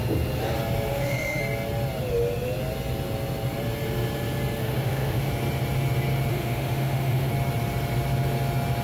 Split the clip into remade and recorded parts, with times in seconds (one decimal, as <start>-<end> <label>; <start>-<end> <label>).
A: 0.0-0.9 recorded; 0.9-1.4 remade; 1.4-4.6 recorded; 4.6-5.3 remade; 5.3-6.3 recorded; 6.3-7.3 remade; 7.3-8.8 recorded